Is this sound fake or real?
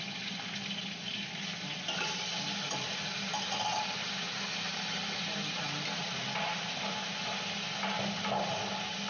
real